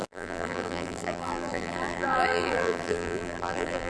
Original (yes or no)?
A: no